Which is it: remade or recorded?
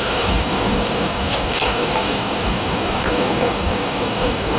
remade